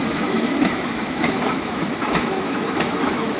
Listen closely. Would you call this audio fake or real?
fake